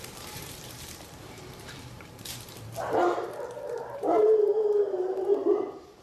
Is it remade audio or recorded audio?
remade